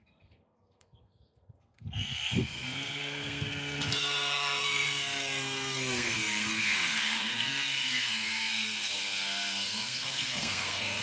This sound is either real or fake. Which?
fake